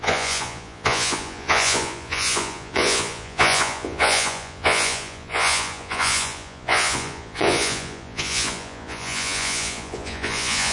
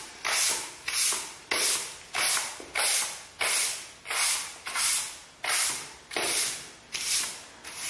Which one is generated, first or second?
first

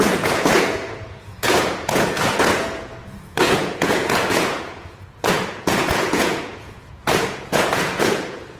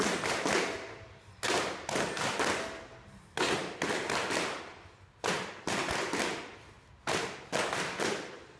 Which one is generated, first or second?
first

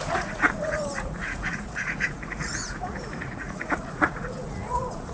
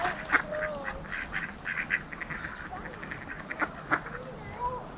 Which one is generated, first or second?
first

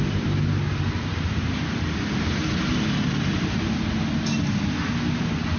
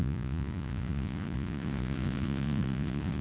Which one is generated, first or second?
second